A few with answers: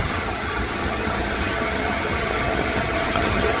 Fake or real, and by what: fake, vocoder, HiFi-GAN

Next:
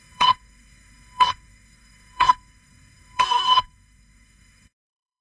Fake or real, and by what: fake, codec, SNAC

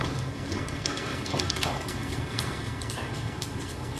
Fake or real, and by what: fake, codec, SNAC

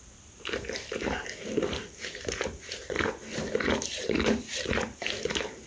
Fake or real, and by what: real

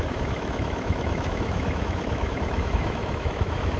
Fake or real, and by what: fake, autoencoder, DAC-VAE